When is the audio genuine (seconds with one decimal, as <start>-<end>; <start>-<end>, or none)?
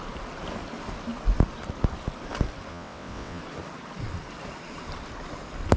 0.0-2.7; 3.4-5.8